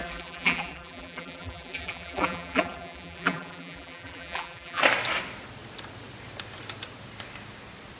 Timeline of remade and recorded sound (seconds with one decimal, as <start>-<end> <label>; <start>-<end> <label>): 0.0-4.8 remade; 4.8-8.0 recorded